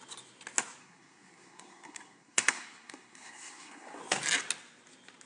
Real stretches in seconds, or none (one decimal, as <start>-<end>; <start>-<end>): 0.0-0.8; 4.0-5.3